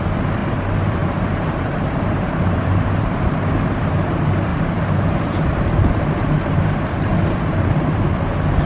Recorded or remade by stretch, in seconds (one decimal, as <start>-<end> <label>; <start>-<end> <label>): 0.0-0.4 recorded; 0.4-3.3 remade; 3.3-4.5 recorded; 4.5-8.2 remade; 8.2-8.7 recorded

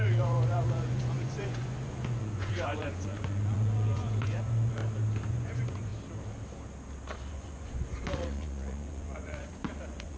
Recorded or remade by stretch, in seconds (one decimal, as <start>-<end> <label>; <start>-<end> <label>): 0.0-4.8 remade; 4.8-5.3 recorded; 5.3-5.9 remade; 5.9-7.3 recorded; 7.3-10.2 remade

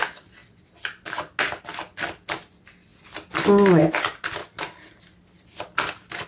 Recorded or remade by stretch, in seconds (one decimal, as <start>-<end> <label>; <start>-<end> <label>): 0.0-4.4 recorded; 4.4-5.0 remade; 5.0-6.3 recorded

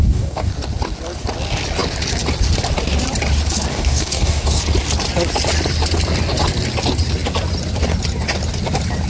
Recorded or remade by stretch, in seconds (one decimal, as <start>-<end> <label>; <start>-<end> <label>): 0.0-0.5 remade; 0.5-3.7 recorded; 3.7-4.6 remade; 4.6-9.1 recorded

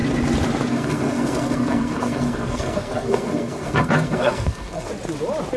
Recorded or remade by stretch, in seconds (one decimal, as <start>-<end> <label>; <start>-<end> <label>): 0.0-0.7 recorded; 0.7-4.9 remade; 4.9-5.6 recorded